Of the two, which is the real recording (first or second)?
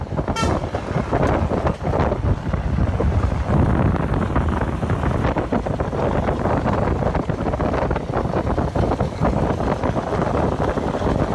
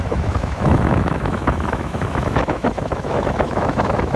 first